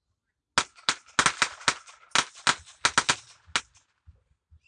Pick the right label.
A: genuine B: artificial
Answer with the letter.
A